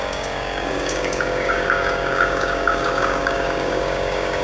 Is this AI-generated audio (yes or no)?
yes